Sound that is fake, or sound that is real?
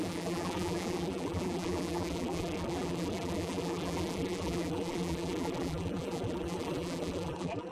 fake